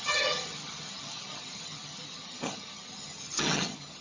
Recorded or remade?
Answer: remade